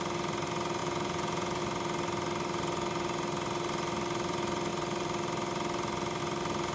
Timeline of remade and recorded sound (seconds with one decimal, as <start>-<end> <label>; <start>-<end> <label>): 0.0-0.8 recorded; 0.8-1.6 remade; 1.6-6.7 recorded